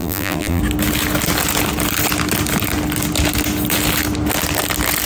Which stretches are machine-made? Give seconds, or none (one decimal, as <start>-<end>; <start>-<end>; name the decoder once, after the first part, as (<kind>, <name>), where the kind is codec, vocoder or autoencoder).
0.0-0.6 (vocoder, BigVGAN v2)